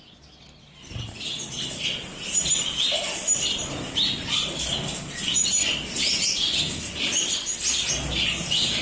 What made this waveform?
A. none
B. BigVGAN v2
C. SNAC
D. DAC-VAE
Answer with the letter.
A